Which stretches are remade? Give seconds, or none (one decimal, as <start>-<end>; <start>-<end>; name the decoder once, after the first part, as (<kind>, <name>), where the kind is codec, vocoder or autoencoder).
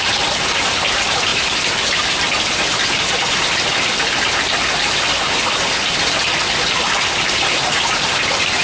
none